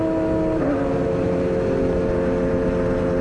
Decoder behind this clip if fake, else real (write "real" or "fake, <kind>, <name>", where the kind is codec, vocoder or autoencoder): real